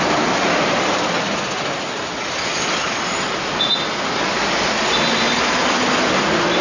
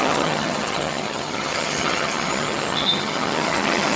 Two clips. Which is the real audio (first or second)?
first